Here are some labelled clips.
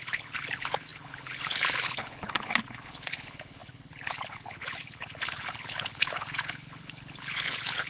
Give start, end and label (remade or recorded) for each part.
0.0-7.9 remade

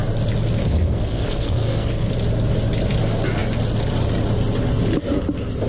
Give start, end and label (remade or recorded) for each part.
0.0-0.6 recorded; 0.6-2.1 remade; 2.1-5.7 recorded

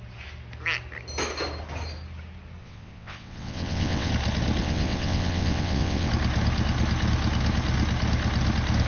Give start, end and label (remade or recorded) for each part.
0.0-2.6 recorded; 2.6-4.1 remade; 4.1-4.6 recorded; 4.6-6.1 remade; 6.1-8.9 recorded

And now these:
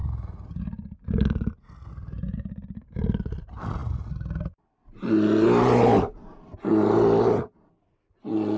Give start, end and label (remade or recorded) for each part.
0.0-8.6 recorded